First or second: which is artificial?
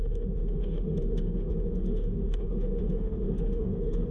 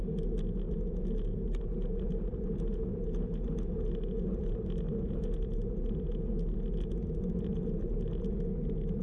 first